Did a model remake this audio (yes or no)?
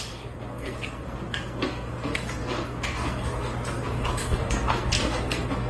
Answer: yes